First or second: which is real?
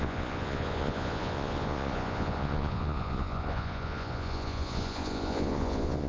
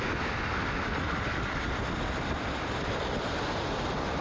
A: second